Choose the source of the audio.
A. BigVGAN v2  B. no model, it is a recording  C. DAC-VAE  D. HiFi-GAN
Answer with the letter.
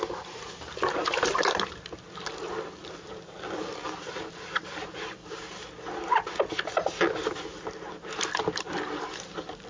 B